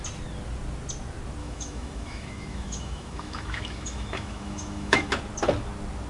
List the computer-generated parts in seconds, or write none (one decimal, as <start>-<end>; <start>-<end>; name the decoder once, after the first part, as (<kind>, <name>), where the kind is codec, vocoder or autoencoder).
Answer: 1.4-5.1 (autoencoder, DAC-VAE)